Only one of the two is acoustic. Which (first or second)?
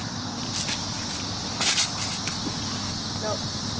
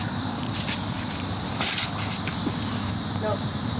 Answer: first